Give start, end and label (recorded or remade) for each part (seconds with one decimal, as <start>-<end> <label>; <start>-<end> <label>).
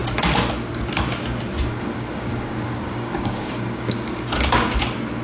0.0-1.7 recorded; 1.7-4.8 remade; 4.8-5.2 recorded